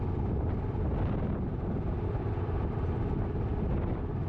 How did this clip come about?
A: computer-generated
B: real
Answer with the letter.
B